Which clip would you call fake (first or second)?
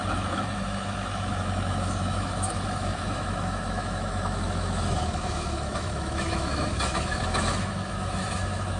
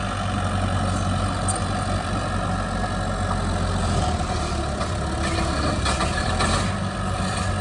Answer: first